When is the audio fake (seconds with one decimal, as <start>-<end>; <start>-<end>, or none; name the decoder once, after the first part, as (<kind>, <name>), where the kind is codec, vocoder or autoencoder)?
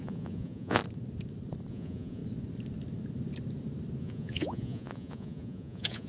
0.0-0.8 (vocoder, Vocos); 1.7-2.2; 4.0-6.1